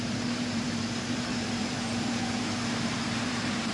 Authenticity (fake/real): fake